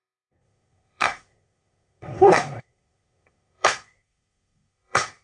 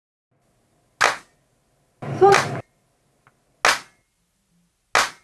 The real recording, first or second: second